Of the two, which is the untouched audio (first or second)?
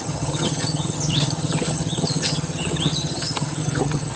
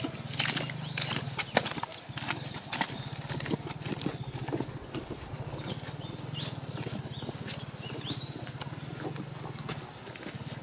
second